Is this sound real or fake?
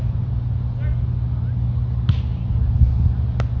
real